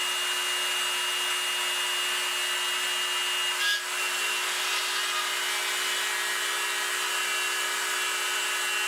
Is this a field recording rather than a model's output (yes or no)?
yes